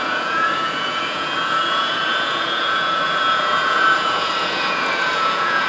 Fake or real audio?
fake